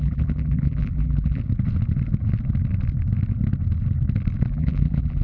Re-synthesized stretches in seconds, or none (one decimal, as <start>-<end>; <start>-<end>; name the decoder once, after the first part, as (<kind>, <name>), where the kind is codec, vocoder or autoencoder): 0.0-1.4 (vocoder, BigVGAN v2); 4.5-5.2